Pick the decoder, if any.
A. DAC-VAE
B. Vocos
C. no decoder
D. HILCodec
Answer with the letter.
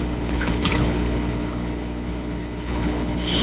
D